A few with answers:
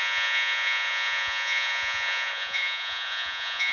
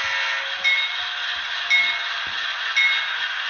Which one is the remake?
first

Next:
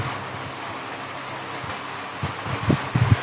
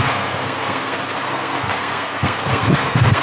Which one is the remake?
second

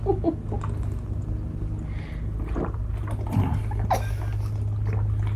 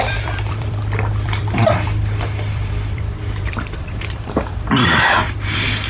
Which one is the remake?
second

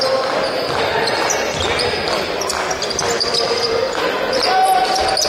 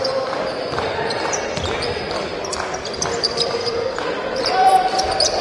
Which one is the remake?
second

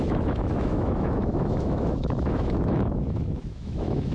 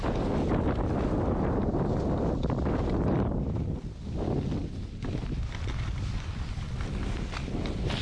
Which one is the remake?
first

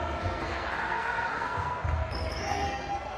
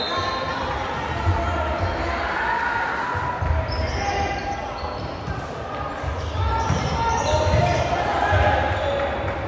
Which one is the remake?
first